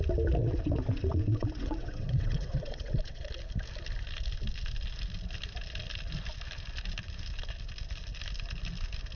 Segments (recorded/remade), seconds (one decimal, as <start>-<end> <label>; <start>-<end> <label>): 0.0-0.4 recorded; 0.4-3.2 remade; 3.2-9.2 recorded